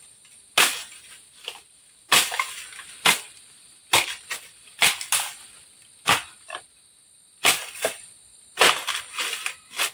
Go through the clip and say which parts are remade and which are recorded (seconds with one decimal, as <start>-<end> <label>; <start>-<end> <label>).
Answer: 0.0-9.9 recorded